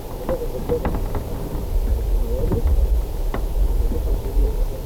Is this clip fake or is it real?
real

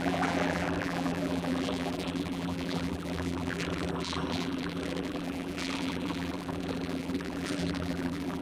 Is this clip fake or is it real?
fake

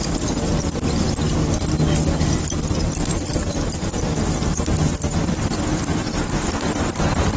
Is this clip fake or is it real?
real